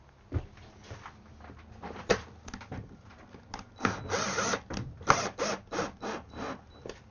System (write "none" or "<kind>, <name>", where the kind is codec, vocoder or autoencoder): none